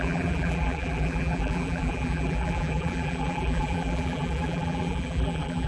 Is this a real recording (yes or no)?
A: no